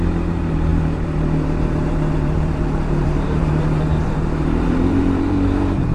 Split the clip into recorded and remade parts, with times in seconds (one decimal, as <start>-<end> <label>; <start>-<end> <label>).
0.0-5.9 remade